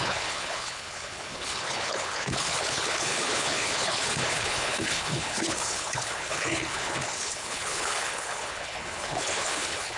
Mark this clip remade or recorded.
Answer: remade